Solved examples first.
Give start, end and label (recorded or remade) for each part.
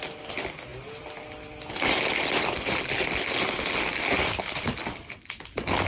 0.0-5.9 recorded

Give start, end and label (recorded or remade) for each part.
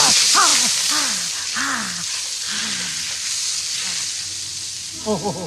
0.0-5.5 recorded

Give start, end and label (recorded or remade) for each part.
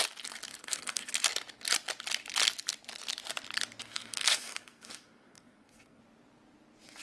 0.0-0.5 recorded; 0.5-1.1 remade; 1.1-3.8 recorded; 3.8-6.0 remade; 6.0-7.0 recorded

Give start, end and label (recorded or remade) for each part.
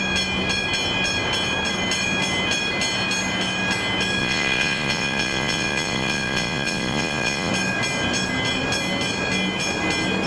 0.0-4.2 recorded; 4.2-7.5 remade; 7.5-10.3 recorded